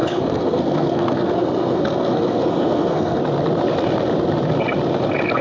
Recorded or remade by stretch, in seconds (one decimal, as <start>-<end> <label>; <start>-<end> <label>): 0.0-3.2 remade; 3.2-5.4 recorded